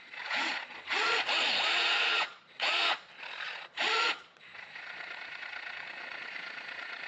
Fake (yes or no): yes